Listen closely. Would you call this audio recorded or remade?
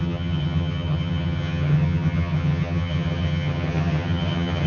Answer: remade